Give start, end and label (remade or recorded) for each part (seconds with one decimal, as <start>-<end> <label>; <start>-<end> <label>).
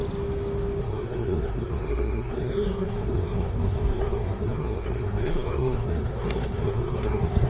0.0-0.8 recorded; 0.8-7.5 remade